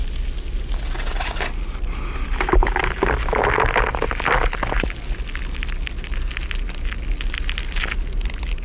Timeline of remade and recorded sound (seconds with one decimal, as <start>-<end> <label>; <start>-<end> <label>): 0.0-8.6 recorded